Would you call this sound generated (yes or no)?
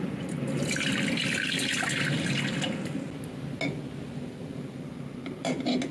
no